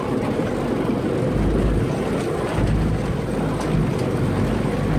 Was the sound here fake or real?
real